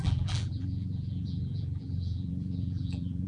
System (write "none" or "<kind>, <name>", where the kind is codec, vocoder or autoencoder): vocoder, BigVGAN v2